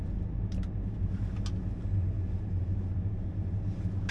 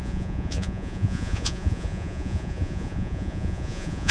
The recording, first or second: first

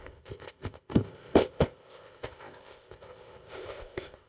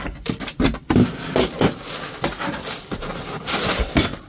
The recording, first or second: second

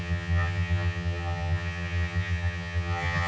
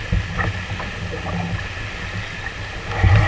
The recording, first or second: second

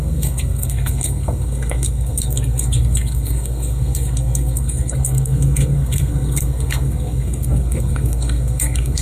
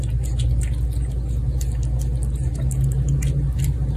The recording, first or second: second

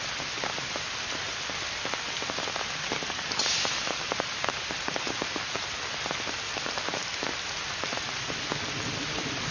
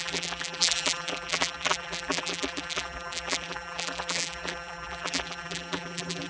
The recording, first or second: first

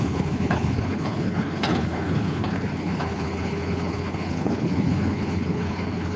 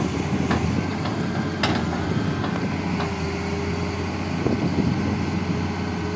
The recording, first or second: second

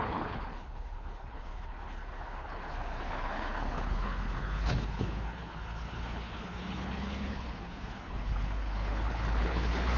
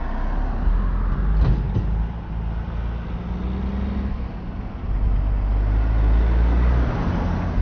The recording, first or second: second